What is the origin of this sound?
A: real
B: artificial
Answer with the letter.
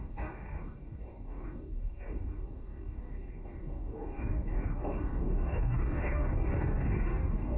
B